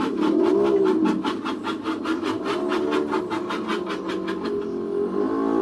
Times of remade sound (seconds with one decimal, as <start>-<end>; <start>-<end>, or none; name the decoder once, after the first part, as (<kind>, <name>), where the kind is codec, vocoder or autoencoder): none